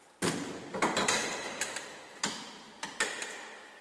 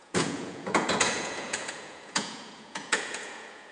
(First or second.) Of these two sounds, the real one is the first